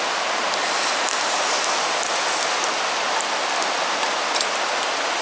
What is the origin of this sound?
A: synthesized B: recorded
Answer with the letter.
B